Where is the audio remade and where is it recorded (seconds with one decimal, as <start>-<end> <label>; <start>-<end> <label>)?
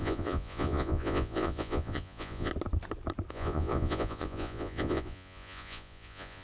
0.0-2.5 remade; 2.5-3.3 recorded; 3.3-6.4 remade